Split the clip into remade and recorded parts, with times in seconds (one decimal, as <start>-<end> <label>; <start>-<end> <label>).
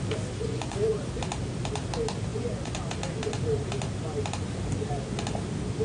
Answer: 0.0-0.4 recorded; 0.4-1.0 remade; 1.0-2.3 recorded; 2.3-2.8 remade; 2.8-5.8 recorded